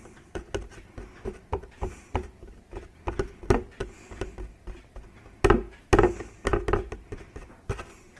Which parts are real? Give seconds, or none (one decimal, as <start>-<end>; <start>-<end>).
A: 0.0-8.2